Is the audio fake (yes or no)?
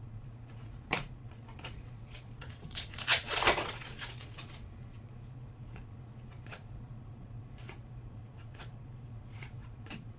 yes